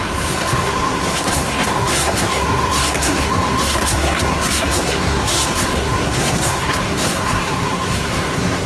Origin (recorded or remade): remade